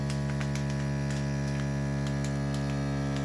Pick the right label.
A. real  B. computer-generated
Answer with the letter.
A